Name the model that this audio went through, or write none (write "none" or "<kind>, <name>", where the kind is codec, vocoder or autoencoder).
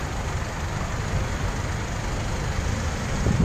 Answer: none